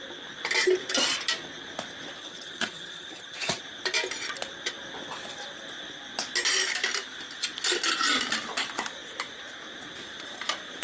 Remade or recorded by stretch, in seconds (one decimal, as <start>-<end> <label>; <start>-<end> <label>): 0.0-2.2 recorded; 2.2-3.6 remade; 3.6-10.8 recorded